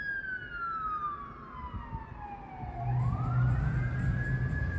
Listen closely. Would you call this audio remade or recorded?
recorded